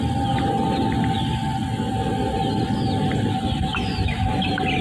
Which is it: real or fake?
real